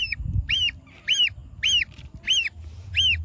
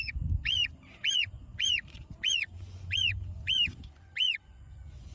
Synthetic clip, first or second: second